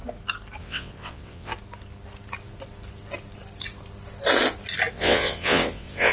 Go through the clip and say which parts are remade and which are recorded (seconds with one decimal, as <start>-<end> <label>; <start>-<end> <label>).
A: 0.0-0.6 recorded; 0.6-1.5 remade; 1.5-4.9 recorded; 4.9-6.1 remade